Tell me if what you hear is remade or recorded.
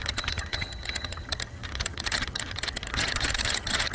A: remade